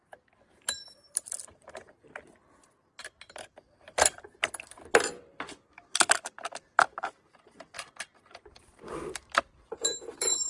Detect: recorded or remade remade